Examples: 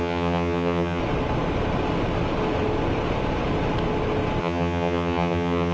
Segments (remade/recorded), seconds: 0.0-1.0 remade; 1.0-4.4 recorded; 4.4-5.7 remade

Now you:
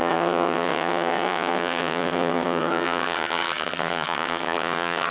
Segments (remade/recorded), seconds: 0.0-5.1 remade

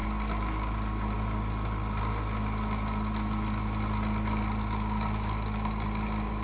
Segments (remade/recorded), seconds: 0.0-6.4 recorded

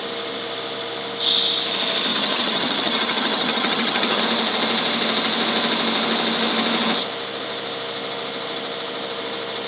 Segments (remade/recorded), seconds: 0.0-2.1 recorded; 2.1-4.2 remade; 4.2-9.7 recorded

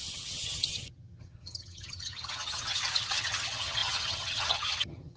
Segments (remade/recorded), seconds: 0.0-5.2 remade

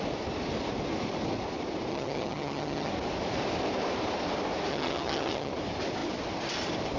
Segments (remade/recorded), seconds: 0.0-1.9 recorded; 1.9-2.9 remade; 2.9-4.7 recorded; 4.7-5.5 remade; 5.5-7.0 recorded